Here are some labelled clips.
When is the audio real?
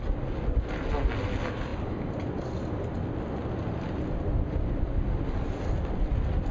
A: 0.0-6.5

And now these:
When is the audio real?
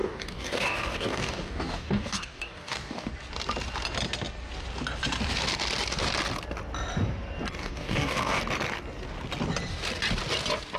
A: 3.1-7.6; 8.4-10.8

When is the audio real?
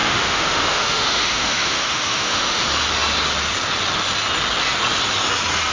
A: 2.6-5.7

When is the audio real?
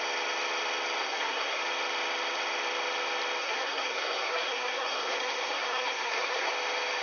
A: 0.0-1.0; 1.6-3.4; 6.5-7.0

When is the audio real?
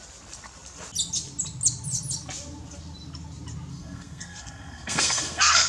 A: 0.0-3.7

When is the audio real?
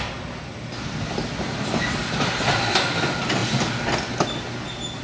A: 0.0-5.0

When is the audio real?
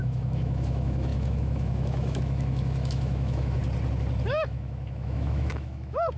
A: 3.6-4.3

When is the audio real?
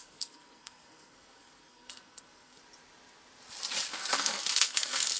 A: 2.6-3.9